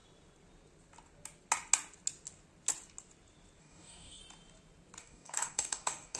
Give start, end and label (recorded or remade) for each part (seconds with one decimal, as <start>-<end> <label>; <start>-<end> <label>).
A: 0.0-3.6 recorded; 3.6-4.2 remade; 4.2-5.0 recorded; 5.0-6.2 remade